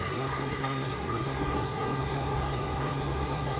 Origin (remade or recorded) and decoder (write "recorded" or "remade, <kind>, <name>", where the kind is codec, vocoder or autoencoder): remade, codec, SNAC